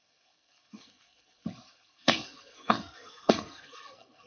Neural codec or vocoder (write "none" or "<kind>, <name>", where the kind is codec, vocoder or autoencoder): codec, SNAC